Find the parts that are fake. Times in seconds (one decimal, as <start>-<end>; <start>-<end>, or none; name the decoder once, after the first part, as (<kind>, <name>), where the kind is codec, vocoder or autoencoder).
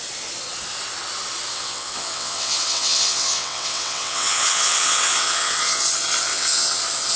1.5-5.8 (vocoder, WaveNeXt); 6.3-6.8